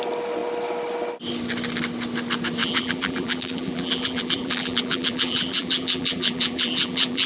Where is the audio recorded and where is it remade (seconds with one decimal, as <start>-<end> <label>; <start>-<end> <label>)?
0.0-2.6 recorded; 2.6-7.3 remade